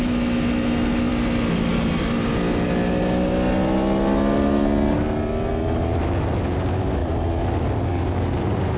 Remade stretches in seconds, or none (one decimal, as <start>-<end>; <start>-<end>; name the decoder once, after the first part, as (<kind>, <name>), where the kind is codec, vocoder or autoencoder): none